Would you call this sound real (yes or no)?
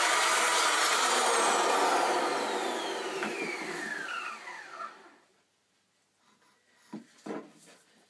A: yes